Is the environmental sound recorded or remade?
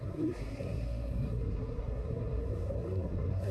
remade